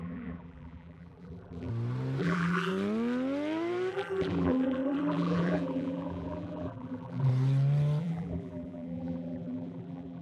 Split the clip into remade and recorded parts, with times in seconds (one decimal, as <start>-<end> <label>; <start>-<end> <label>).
0.0-1.7 remade; 1.7-2.2 recorded; 2.2-2.7 remade; 2.7-3.9 recorded; 3.9-7.3 remade; 7.3-8.0 recorded; 8.0-10.2 remade